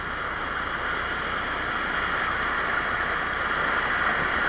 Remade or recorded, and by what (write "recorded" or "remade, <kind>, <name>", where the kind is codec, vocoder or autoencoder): recorded